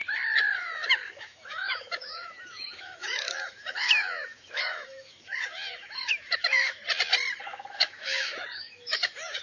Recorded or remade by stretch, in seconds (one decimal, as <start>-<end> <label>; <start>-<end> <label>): 0.0-0.6 recorded; 0.6-6.8 remade; 6.8-7.4 recorded; 7.4-9.4 remade